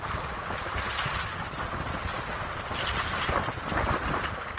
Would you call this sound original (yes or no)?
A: yes